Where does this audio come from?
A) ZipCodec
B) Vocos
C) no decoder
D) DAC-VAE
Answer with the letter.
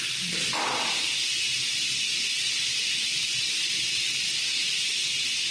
C